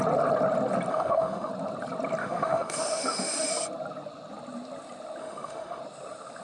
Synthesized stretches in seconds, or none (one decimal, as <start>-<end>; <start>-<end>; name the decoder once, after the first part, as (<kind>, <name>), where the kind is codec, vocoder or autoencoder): 0.9-1.5 (autoencoder, DAC-VAE); 2.2-3.5; 5.2-5.8